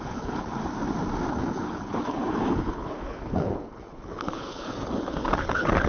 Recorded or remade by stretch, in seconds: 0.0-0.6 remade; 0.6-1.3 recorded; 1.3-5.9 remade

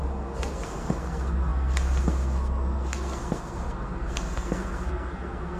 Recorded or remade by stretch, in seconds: 0.0-5.6 remade

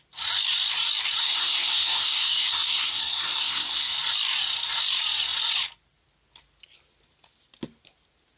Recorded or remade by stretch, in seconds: 0.0-1.2 recorded; 1.2-3.9 remade; 3.9-8.4 recorded

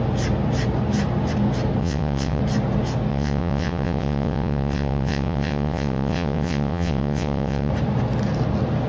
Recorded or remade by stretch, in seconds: 0.0-1.8 recorded; 1.8-2.4 remade; 2.4-3.1 recorded; 3.1-7.7 remade; 7.7-8.9 recorded

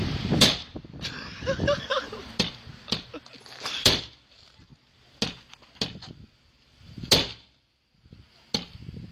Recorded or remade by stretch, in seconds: 0.0-4.7 remade; 4.7-9.1 recorded